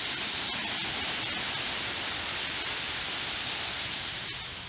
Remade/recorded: recorded